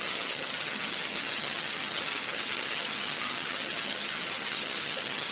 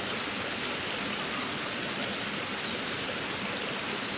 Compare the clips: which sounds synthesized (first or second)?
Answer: first